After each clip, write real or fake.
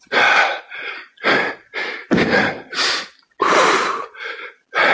real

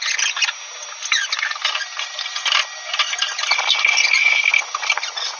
real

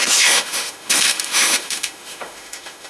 fake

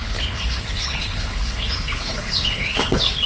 fake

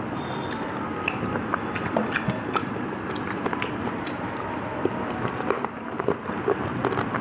real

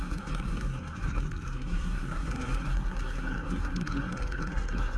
fake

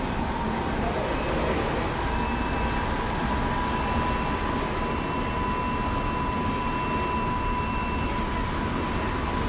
real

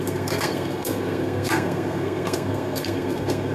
fake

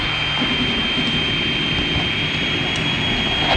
real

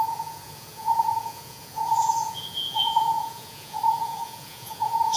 fake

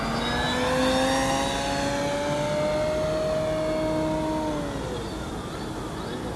real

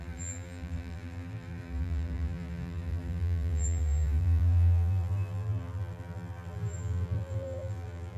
fake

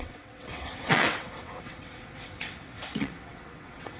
fake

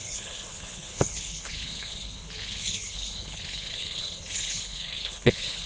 fake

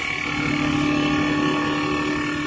real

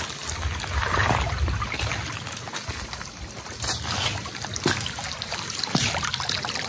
real